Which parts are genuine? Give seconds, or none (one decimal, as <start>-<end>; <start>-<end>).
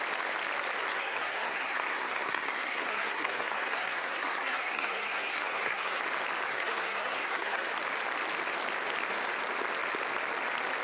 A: 0.0-0.9; 6.0-6.5; 7.7-10.8